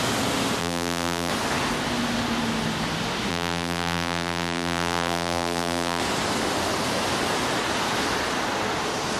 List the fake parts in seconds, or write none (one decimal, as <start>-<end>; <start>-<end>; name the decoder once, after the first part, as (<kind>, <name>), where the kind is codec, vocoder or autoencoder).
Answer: 0.6-1.3 (vocoder, BigVGAN v2); 3.3-6.0